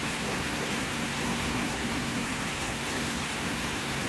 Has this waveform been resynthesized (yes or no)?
yes